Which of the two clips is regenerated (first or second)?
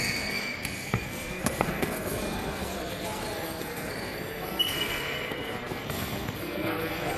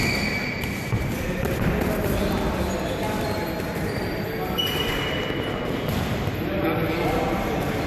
first